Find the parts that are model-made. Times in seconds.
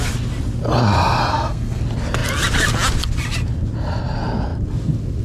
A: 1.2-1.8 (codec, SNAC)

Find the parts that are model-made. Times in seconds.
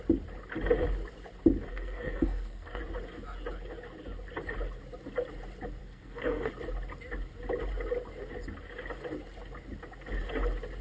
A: 1.7-2.8 (codec, SNAC); 5.8-6.5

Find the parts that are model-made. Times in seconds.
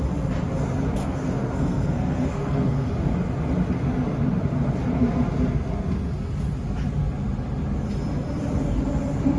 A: 1.0-2.9 (codec, SNAC)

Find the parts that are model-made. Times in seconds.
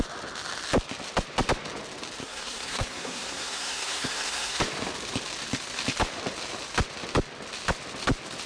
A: 2.2-4.6 (codec, SNAC)